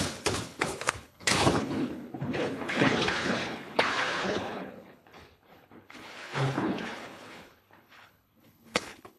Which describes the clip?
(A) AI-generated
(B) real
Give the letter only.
A